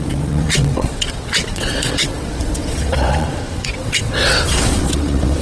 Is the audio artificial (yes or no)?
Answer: yes